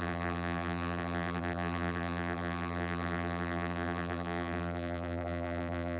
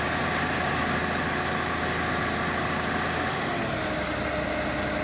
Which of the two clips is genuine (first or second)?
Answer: second